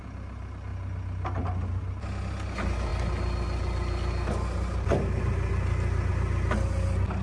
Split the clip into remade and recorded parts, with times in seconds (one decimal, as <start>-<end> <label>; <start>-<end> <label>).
0.0-7.2 recorded